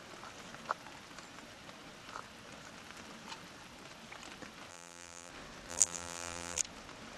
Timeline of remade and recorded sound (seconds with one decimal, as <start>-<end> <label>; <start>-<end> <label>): 0.0-4.7 recorded; 4.7-5.3 remade; 5.3-5.7 recorded; 5.7-6.6 remade; 6.6-7.2 recorded